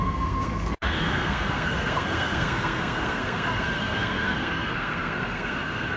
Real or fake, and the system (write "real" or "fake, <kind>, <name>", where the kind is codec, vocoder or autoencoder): fake, codec, SNAC